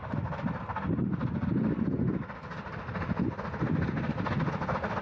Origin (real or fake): real